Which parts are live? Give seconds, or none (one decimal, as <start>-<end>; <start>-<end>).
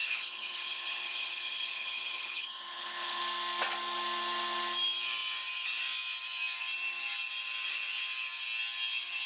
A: 3.2-9.3